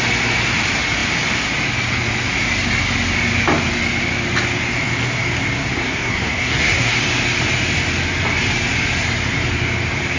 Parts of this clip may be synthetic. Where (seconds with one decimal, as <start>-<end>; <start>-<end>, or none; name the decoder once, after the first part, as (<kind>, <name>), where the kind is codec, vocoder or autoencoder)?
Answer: 5.7-7.0 (codec, SNAC)